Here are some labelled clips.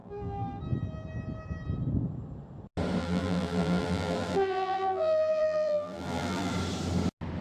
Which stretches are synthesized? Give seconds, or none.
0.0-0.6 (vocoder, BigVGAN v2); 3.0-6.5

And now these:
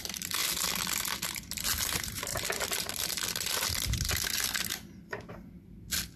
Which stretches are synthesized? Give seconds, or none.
none